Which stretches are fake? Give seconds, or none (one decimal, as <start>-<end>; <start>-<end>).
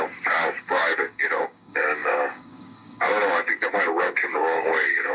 0.0-5.1